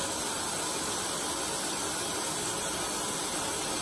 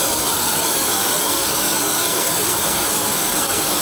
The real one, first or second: first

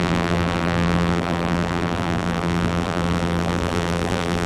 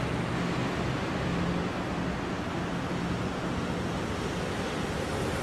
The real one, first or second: second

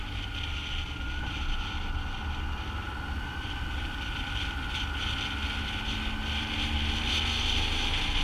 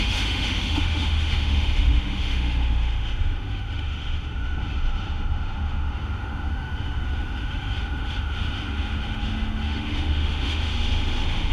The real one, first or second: first